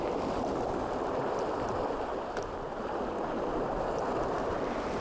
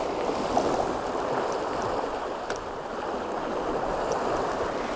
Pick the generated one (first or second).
second